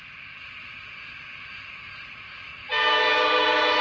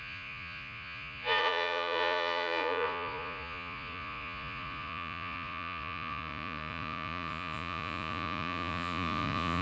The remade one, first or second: second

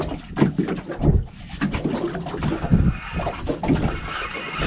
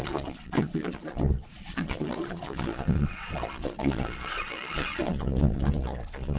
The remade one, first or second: second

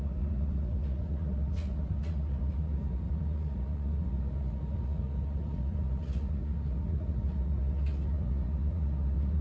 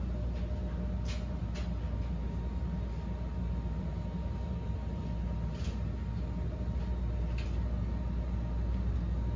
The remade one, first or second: first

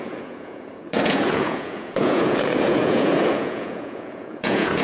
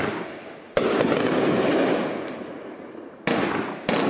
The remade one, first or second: first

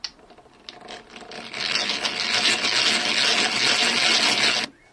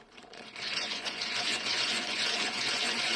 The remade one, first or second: second